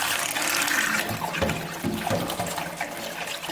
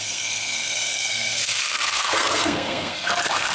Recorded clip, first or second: first